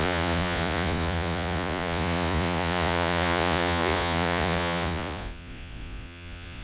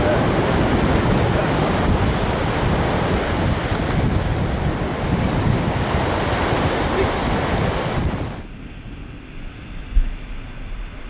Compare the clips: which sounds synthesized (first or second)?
first